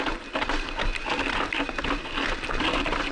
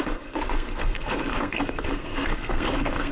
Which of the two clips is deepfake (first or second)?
second